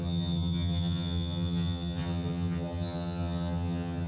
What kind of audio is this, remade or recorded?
remade